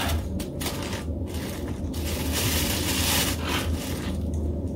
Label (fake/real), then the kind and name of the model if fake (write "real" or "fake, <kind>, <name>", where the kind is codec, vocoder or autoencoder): real